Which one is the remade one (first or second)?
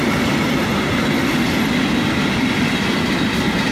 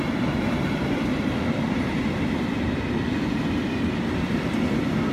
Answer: second